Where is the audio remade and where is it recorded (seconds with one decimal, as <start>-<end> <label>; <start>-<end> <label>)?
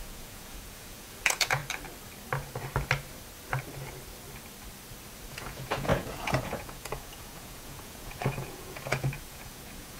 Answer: 0.0-1.6 remade; 1.6-5.3 recorded; 5.3-10.0 remade